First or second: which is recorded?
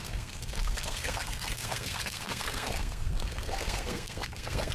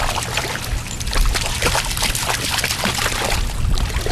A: second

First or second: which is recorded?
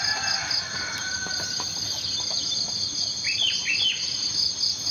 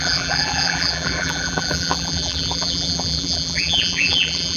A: first